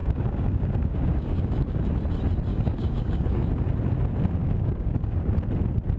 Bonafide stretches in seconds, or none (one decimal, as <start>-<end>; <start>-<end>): 1.9-2.5; 3.5-4.4; 5.3-6.0